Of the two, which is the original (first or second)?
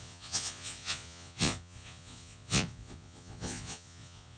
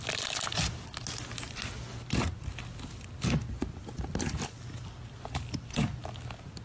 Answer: second